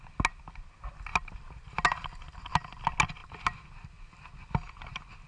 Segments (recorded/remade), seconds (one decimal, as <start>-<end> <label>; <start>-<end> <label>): 0.0-5.3 recorded